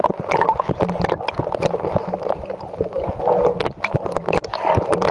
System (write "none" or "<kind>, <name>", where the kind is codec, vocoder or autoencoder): none